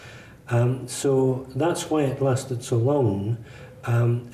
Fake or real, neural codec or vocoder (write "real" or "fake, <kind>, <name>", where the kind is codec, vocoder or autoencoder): real